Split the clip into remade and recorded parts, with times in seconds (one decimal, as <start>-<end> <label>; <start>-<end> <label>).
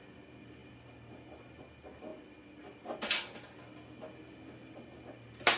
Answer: 0.0-5.6 recorded